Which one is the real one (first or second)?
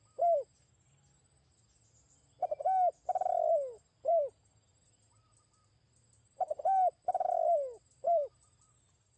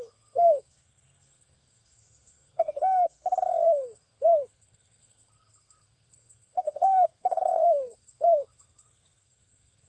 first